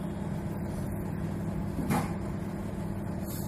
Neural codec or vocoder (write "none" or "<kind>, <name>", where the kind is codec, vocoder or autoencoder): none